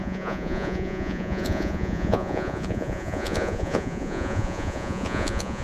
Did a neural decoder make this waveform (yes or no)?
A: yes